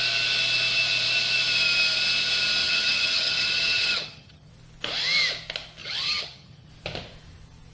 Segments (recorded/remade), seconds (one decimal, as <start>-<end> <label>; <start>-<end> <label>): 0.0-2.6 recorded; 2.6-4.5 remade; 4.5-5.8 recorded; 5.8-6.7 remade; 6.7-7.7 recorded